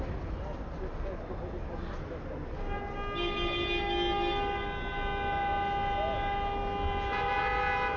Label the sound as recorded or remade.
recorded